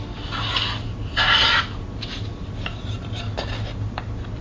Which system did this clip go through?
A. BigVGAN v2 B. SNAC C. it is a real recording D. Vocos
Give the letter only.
C